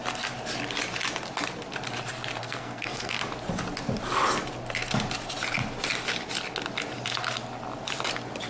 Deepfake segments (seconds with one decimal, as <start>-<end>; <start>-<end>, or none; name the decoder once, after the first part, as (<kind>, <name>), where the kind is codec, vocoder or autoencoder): 2.4-3.2 (codec, SNAC)